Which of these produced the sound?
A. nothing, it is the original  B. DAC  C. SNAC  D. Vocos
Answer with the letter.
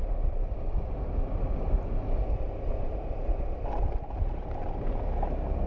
A